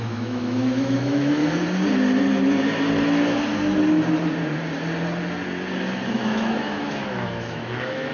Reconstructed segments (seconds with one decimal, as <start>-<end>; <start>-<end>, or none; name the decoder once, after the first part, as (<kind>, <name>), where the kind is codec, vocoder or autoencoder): 0.0-1.4 (autoencoder, DAC-VAE); 6.1-8.1